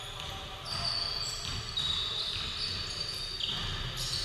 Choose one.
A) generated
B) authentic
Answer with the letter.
B